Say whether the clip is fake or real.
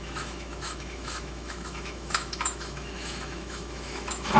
fake